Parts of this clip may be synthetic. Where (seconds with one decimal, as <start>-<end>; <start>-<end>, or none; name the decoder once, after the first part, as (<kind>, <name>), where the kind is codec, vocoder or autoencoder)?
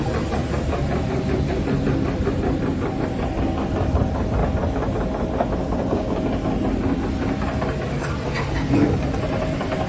none